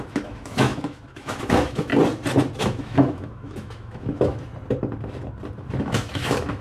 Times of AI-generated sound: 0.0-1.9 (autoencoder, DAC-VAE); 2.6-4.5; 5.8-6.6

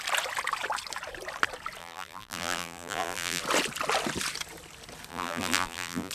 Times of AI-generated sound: 1.8-3.4 (vocoder, BigVGAN v2); 5.1-6.1

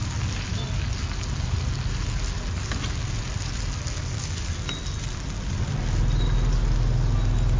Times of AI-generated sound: none

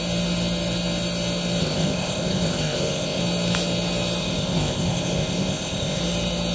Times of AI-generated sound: 1.6-3.2 (codec, ZipCodec); 4.2-6.0

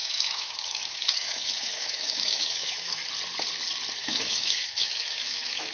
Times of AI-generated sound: 0.0-3.0 (autoencoder, DAC-VAE); 3.9-5.7